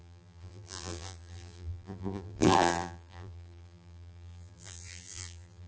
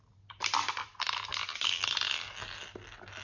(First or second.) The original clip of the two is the second